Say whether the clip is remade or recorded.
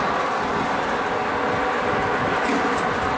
recorded